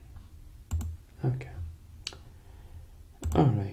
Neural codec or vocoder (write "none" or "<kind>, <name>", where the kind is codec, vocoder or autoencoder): none